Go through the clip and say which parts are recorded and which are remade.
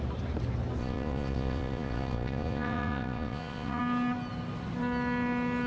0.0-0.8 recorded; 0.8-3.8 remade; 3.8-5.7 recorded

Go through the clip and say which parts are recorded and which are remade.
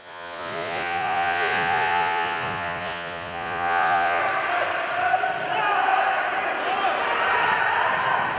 0.0-4.2 remade; 4.2-8.4 recorded